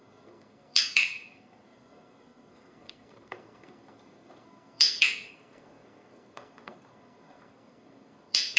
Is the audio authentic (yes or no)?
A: no